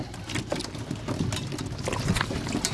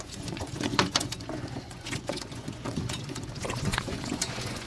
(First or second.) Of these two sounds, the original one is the first